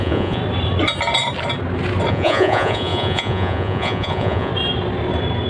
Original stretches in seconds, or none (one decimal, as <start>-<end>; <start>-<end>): 0.4-2.1; 4.5-5.5